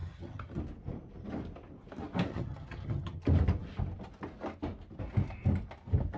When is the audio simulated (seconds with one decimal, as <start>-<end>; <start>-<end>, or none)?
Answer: 0.0-0.6; 2.3-3.2